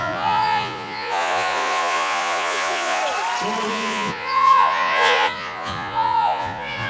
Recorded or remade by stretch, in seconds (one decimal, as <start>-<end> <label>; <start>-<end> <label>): 0.0-3.0 remade; 3.0-3.7 recorded; 3.7-6.9 remade